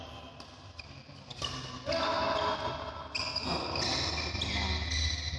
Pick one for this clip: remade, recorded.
recorded